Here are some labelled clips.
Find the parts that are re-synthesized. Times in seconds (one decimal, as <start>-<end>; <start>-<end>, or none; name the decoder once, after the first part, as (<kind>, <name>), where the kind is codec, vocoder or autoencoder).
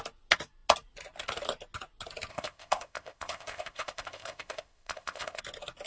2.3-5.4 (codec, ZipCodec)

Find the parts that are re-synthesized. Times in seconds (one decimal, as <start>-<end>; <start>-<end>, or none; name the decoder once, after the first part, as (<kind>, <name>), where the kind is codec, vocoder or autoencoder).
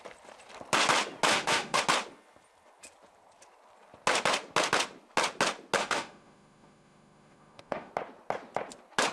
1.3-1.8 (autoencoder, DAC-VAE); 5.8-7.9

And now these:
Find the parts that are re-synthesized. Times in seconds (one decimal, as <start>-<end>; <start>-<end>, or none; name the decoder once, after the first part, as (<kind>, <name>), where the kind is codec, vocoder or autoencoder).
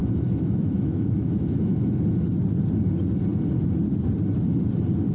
0.0-2.0 (autoencoder, DAC-VAE)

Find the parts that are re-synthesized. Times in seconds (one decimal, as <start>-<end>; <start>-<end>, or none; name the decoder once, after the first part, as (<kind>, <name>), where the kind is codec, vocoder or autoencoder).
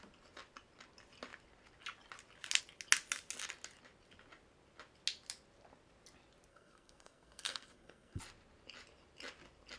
6.5-8.2 (codec, SNAC)